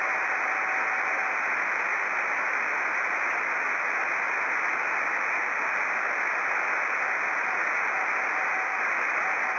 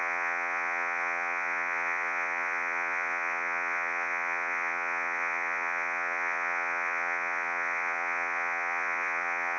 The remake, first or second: second